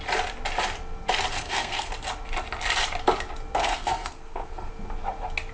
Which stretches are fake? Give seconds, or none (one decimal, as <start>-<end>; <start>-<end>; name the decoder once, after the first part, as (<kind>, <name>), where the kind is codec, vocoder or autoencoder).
1.3-1.9 (codec, SNAC); 3.6-4.7